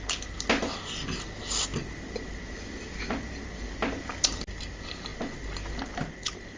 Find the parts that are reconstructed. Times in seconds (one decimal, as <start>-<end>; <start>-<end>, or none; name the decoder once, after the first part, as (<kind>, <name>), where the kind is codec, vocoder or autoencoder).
none